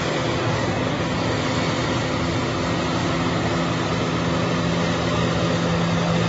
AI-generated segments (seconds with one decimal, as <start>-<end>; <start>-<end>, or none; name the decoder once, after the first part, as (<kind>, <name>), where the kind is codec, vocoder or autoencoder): 0.4-1.0 (codec, DAC)